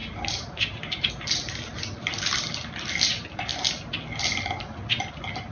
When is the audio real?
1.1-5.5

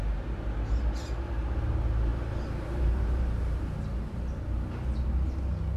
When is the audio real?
0.0-2.1; 4.2-5.8

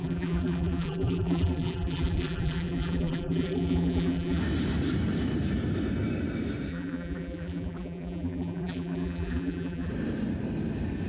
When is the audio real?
4.4-6.7; 9.9-11.1

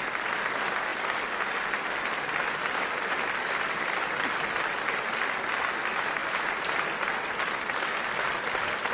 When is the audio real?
0.0-6.2; 6.8-8.9

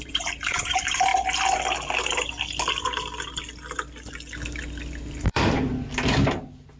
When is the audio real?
1.1-5.2; 5.7-6.8

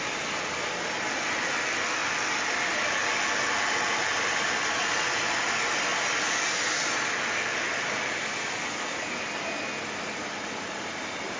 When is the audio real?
0.0-4.1; 4.9-11.4